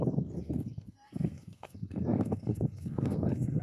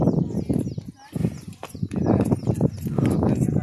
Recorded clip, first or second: second